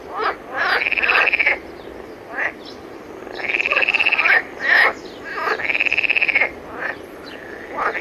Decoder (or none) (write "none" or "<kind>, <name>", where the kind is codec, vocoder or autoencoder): none